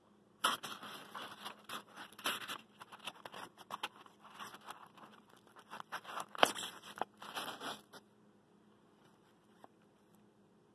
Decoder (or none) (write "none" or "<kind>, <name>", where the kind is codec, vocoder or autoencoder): none